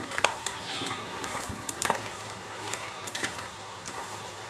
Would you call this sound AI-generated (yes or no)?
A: yes